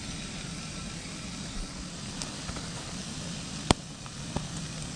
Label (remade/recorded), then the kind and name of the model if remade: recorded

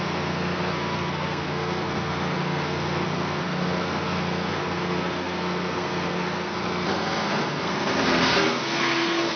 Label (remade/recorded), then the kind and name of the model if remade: remade, codec, SNAC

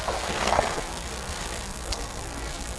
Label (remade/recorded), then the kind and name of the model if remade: remade, codec, SNAC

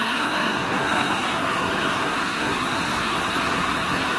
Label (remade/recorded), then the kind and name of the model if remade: remade, codec, SNAC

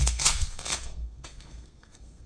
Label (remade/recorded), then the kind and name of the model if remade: remade, codec, SNAC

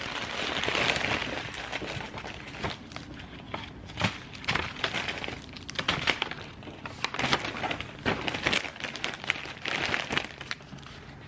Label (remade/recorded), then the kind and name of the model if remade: recorded